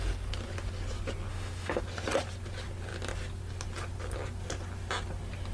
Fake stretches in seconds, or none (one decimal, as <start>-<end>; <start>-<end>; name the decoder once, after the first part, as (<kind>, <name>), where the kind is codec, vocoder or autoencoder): 1.3-1.8 (autoencoder, DAC-VAE)